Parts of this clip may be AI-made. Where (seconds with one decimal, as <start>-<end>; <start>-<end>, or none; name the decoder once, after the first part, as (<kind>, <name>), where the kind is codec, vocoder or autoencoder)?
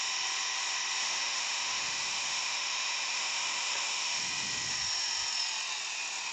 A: 1.0-4.2 (autoencoder, DAC-VAE)